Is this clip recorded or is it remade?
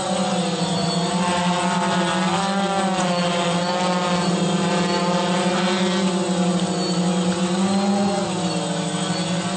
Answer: recorded